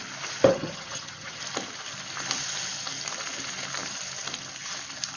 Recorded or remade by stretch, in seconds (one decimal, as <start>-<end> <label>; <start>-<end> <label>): 0.0-0.5 recorded; 0.5-1.4 remade; 1.4-5.2 recorded